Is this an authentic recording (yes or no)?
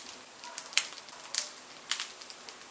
yes